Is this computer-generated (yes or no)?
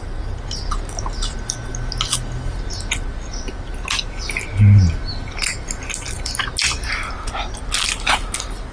no